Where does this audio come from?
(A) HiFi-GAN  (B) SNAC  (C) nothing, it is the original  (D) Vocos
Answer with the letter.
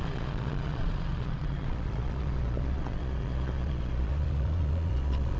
D